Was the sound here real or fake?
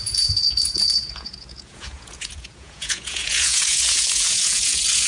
fake